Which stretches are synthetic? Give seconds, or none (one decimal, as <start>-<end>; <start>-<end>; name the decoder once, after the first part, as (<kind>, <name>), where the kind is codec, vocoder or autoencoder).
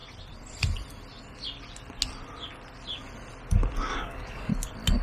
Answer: 3.9-4.5 (codec, DAC)